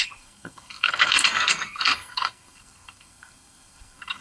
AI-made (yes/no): yes